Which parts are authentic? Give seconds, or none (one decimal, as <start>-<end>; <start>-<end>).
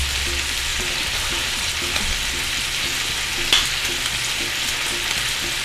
0.0-0.7; 1.7-5.6